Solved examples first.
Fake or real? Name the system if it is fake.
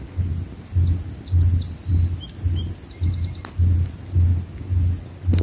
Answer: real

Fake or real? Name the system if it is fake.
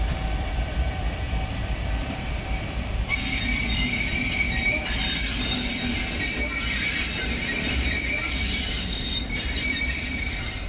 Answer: fake, vocoder, BigVGAN v2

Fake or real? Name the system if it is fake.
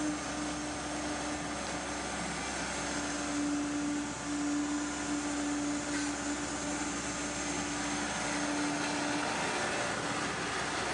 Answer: real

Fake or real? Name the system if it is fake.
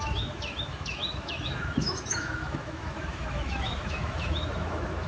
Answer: fake, autoencoder, DAC-VAE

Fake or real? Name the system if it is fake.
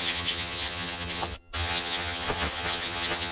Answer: fake, vocoder, HiFi-GAN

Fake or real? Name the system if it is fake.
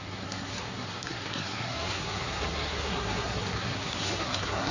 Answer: fake, codec, SNAC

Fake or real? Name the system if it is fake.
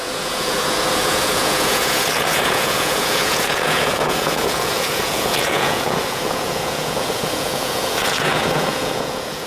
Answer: fake, vocoder, Vocos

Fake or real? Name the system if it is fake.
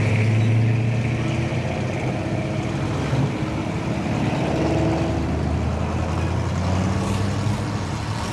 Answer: real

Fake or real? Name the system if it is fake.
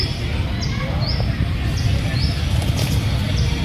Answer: real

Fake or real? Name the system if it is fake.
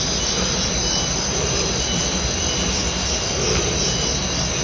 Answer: real